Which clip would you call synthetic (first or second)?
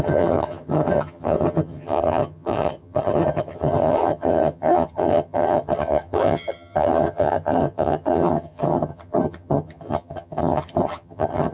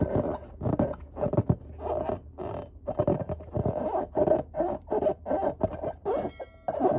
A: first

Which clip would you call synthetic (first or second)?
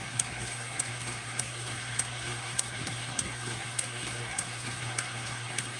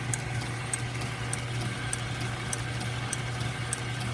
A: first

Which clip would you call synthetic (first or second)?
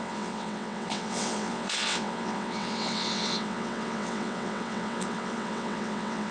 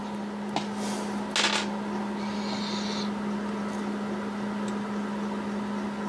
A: first